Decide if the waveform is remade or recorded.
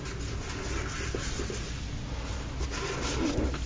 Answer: recorded